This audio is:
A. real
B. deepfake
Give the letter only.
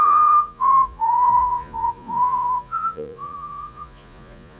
B